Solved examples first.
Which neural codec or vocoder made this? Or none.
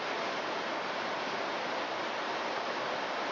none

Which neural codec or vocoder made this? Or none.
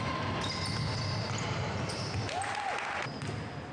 none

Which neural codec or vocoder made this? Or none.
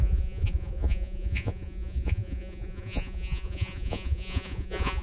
vocoder, Vocos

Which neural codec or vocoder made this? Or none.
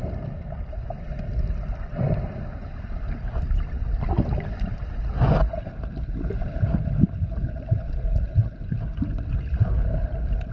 none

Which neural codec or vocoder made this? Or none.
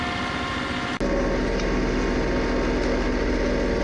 none